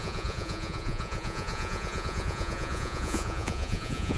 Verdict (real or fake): fake